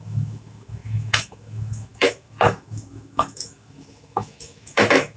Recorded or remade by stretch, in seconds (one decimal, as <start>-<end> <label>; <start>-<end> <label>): 0.0-5.2 remade